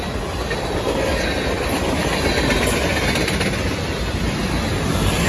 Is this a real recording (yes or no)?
yes